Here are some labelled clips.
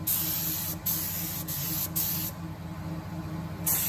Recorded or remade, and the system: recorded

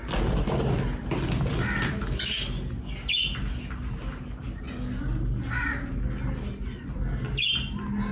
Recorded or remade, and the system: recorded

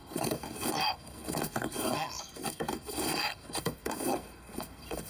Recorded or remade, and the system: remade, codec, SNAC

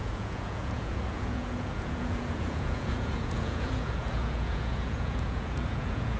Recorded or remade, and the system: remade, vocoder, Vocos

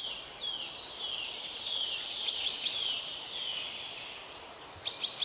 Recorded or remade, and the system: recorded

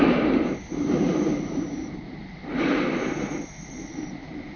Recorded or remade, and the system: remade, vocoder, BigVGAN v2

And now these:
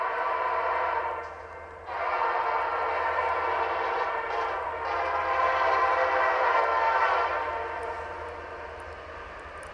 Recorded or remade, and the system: recorded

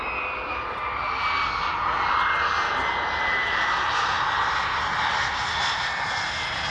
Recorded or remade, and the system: recorded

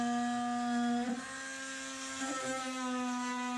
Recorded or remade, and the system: recorded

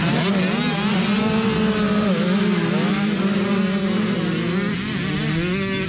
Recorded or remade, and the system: recorded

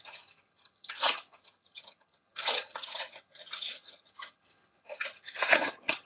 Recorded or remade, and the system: remade, vocoder, HiFi-GAN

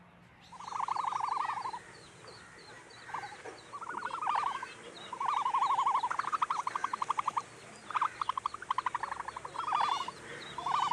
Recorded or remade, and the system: recorded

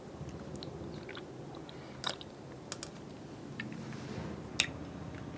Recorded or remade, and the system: recorded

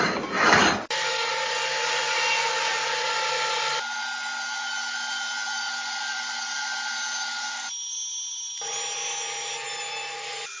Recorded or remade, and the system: recorded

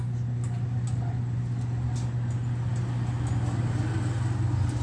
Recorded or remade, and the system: recorded